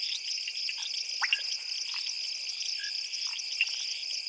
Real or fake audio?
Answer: real